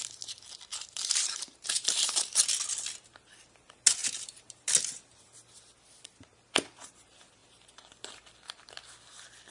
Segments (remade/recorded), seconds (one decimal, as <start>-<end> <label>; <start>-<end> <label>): 0.0-0.7 recorded; 0.7-2.3 remade; 2.3-4.0 recorded; 4.0-4.7 remade; 4.7-7.4 recorded; 7.4-8.2 remade; 8.2-9.5 recorded